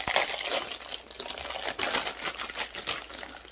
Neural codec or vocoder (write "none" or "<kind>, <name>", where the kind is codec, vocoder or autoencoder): none